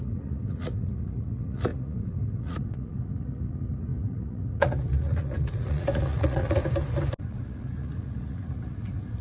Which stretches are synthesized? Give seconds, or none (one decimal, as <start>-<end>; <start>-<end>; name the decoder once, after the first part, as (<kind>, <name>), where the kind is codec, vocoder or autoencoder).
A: 0.0-6.6 (vocoder, Vocos); 7.2-9.2